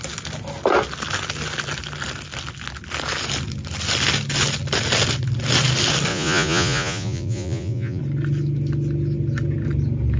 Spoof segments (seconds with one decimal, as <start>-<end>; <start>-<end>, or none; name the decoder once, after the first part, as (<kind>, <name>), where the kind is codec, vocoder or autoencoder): 6.1-8.0 (vocoder, Vocos)